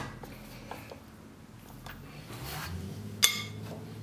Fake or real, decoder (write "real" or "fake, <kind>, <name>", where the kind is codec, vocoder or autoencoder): real